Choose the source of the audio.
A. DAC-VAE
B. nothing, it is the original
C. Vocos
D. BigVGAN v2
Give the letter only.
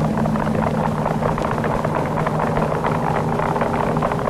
B